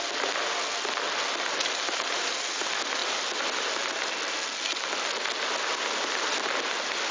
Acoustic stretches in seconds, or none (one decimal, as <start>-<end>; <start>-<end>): 0.0-7.1